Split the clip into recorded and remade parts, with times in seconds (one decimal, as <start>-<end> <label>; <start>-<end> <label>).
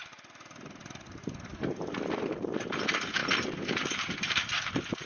0.0-5.1 recorded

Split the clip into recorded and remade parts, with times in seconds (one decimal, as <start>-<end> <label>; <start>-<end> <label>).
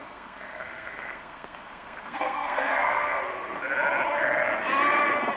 0.0-3.2 remade; 3.2-5.4 recorded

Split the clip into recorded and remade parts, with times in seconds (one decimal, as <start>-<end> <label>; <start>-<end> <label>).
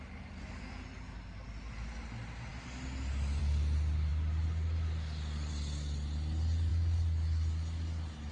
0.0-8.3 recorded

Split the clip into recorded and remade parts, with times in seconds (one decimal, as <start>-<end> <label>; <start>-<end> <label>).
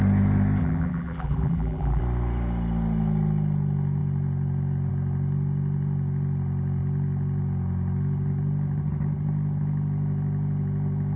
0.0-0.6 recorded; 0.6-2.0 remade; 2.0-11.2 recorded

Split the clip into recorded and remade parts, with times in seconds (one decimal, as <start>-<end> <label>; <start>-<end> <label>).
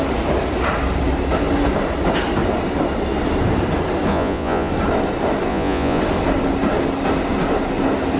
0.0-4.1 recorded; 4.1-4.7 remade; 4.7-5.5 recorded; 5.5-6.0 remade; 6.0-8.2 recorded